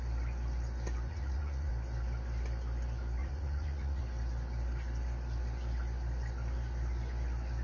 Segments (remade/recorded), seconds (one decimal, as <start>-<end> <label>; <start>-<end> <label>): 0.0-1.1 recorded; 1.1-1.7 remade; 1.7-3.2 recorded; 3.2-4.0 remade; 4.0-7.6 recorded